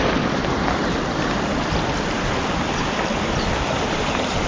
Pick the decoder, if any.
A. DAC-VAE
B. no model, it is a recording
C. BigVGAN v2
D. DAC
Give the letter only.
C